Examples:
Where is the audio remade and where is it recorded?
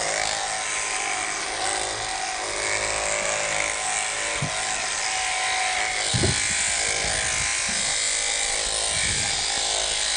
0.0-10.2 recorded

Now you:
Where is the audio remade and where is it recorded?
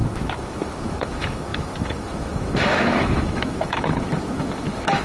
0.0-5.0 remade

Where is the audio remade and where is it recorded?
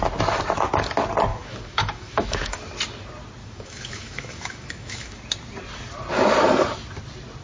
0.0-1.3 recorded; 1.3-2.6 remade; 2.6-3.4 recorded; 3.4-5.2 remade; 5.2-7.4 recorded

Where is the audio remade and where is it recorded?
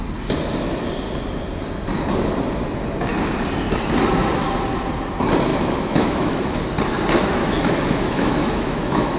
0.0-5.5 recorded; 5.5-6.6 remade; 6.6-7.4 recorded; 7.4-9.2 remade